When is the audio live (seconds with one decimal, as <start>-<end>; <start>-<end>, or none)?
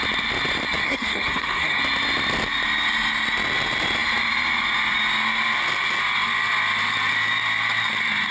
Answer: 0.0-0.8; 1.8-8.3